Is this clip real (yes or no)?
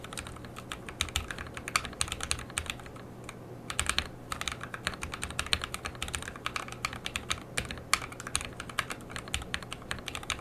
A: yes